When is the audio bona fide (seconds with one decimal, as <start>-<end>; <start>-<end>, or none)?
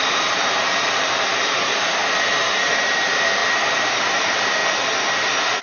2.0-2.5; 4.6-5.6